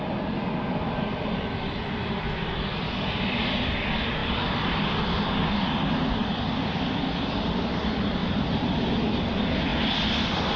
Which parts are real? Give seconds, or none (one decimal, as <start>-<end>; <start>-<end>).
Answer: 0.0-4.2; 4.8-6.2; 7.0-9.7